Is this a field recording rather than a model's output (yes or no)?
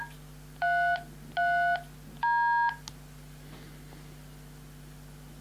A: yes